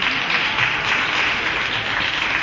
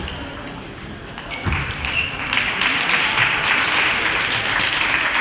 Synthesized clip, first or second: second